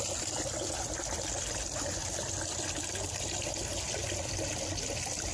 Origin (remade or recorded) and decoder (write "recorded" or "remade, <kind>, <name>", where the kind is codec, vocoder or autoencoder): recorded